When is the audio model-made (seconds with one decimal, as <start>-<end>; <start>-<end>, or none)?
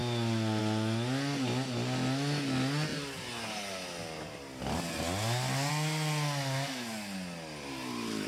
none